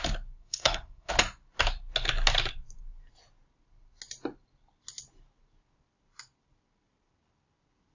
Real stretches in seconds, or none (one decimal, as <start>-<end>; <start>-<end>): 0.0-0.4; 1.1-7.9